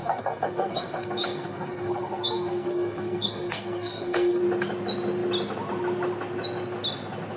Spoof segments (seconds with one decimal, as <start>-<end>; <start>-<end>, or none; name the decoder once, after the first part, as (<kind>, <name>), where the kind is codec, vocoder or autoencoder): 0.0-4.4 (codec, SNAC)

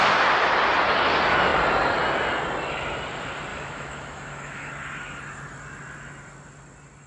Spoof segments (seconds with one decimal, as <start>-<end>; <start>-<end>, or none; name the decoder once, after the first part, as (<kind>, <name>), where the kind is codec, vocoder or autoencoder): 3.5-4.7 (autoencoder, DAC-VAE)

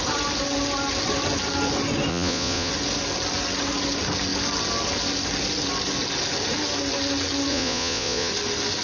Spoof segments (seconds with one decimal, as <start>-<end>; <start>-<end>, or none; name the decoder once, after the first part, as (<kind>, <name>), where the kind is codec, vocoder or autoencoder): 2.1-2.7 (vocoder, Vocos); 7.5-8.3

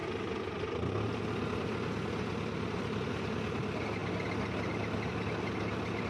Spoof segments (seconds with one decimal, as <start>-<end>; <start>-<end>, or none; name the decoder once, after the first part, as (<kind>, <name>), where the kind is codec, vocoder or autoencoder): none

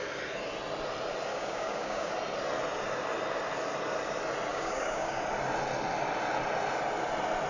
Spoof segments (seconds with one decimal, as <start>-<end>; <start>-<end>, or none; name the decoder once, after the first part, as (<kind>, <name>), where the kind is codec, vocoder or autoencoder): 1.3-2.1 (codec, DAC); 4.5-5.2

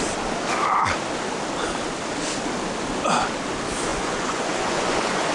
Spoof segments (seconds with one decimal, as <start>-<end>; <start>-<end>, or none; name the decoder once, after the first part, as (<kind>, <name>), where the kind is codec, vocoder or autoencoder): 3.9-5.3 (vocoder, Vocos)

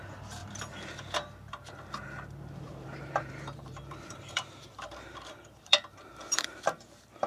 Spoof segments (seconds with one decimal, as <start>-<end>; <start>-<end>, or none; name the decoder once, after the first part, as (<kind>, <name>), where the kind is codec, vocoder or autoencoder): 0.0-7.3 (vocoder, BigVGAN v2)